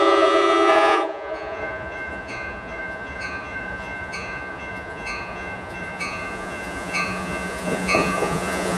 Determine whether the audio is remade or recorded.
remade